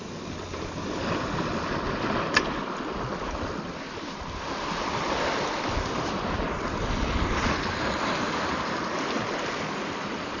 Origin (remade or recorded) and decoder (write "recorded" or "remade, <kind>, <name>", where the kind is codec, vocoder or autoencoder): recorded